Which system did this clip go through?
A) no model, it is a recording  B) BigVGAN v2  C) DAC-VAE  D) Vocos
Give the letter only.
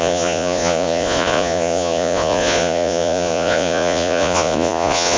D